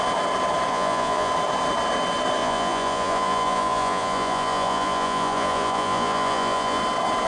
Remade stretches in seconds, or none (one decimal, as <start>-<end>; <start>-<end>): 0.7-1.3; 2.4-6.8